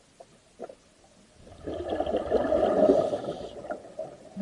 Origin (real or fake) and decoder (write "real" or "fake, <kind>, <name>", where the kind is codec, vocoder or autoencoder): real